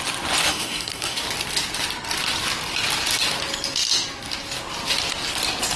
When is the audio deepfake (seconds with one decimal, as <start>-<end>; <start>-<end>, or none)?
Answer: 0.5-1.2